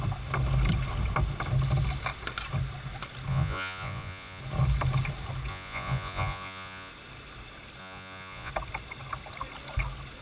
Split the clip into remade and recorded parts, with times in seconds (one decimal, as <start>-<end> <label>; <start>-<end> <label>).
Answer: 0.0-3.3 recorded; 3.3-4.4 remade; 4.4-5.5 recorded; 5.5-6.9 remade; 6.9-7.8 recorded; 7.8-8.5 remade; 8.5-10.2 recorded